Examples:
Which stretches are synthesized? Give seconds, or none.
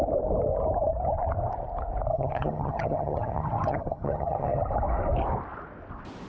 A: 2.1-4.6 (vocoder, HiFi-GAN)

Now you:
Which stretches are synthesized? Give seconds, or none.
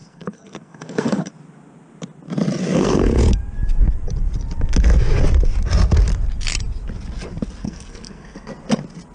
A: 0.0-1.3 (codec, SNAC); 2.6-3.2; 7.6-8.5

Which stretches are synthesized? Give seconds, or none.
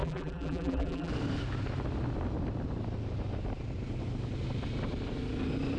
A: 0.0-1.1 (vocoder, BigVGAN v2)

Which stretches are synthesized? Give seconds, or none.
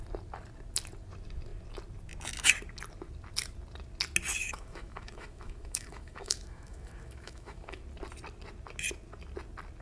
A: 4.4-7.8 (autoencoder, DAC-VAE)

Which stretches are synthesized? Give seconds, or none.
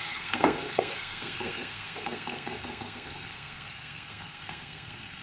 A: 0.0-5.2 (codec, SNAC)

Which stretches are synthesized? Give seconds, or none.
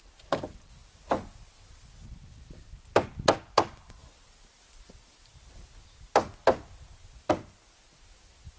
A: none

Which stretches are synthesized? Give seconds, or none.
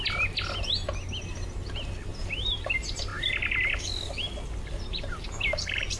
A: 2.1-2.7 (vocoder, BigVGAN v2); 4.9-6.0